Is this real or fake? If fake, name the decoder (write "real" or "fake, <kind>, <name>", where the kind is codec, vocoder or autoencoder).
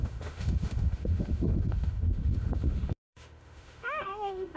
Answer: fake, autoencoder, DAC-VAE